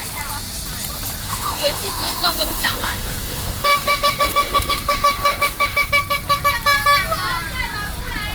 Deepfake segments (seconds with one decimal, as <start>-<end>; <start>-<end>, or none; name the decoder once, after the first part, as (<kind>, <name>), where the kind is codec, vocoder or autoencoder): 1.2-5.9 (autoencoder, DAC-VAE)